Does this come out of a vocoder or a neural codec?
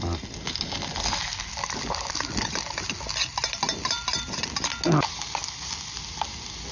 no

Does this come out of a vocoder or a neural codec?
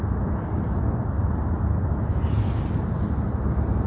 no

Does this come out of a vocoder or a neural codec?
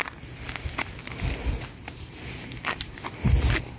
no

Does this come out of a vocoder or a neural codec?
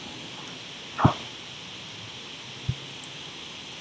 no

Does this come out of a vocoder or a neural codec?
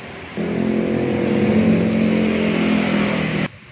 no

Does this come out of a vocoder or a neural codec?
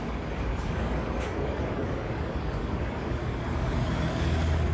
yes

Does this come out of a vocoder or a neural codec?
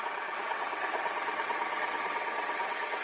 yes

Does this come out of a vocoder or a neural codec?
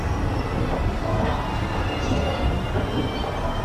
no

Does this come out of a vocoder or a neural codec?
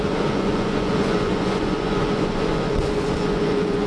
yes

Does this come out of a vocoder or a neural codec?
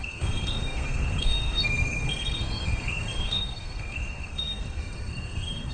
yes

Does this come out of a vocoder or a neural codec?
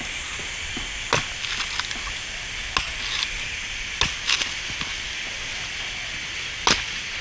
no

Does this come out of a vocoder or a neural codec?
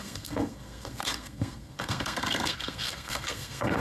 yes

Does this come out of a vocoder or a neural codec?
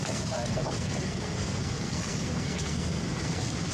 yes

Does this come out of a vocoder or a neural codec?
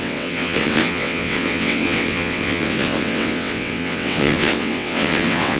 yes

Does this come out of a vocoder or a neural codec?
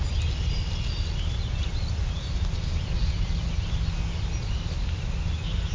no